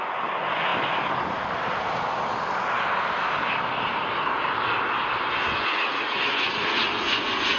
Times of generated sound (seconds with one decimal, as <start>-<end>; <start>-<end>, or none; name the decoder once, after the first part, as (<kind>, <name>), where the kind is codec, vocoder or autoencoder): 0.0-0.7 (vocoder, Vocos); 5.3-7.6